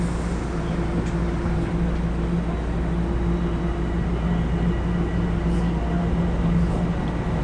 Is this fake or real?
real